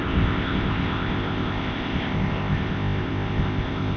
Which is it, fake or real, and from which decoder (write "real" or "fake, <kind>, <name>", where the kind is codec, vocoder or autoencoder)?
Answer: fake, codec, ZipCodec